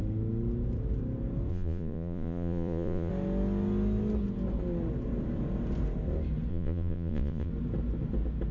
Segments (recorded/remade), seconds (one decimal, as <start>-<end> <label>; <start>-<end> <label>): 0.0-1.5 recorded; 1.5-3.1 remade; 3.1-6.5 recorded; 6.5-7.5 remade; 7.5-8.5 recorded